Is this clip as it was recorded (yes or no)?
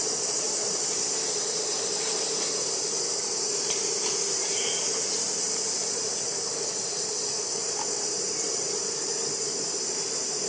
no